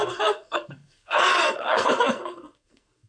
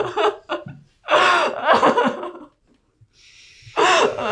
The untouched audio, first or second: second